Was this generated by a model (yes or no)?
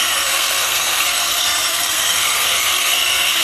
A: yes